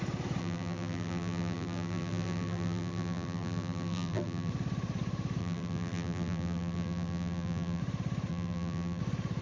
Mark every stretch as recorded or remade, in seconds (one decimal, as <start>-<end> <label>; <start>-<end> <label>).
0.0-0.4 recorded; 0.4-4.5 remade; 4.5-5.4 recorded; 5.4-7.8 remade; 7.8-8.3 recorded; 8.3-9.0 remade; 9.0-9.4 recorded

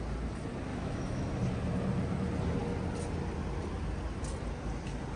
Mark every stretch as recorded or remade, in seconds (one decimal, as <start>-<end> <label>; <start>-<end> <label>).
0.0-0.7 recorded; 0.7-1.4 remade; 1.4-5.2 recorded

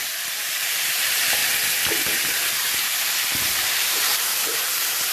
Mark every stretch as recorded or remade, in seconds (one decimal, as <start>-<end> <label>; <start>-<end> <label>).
0.0-1.4 remade; 1.4-2.5 recorded; 2.5-5.1 remade